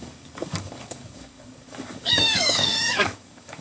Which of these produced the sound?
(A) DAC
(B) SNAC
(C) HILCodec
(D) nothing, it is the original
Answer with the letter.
A